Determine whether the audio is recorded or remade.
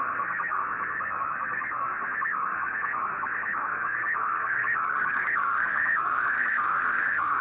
remade